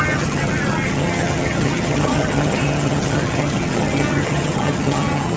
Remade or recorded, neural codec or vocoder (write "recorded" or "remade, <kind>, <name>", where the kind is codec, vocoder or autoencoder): remade, vocoder, HiFi-GAN